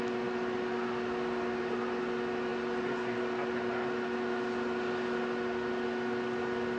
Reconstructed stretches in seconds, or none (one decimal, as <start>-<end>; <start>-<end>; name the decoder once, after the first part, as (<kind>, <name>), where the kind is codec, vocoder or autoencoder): none